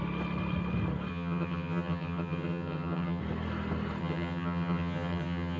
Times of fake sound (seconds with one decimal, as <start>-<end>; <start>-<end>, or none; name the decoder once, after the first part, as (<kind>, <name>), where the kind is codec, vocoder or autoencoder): 1.1-3.2 (vocoder, HiFi-GAN); 4.0-5.6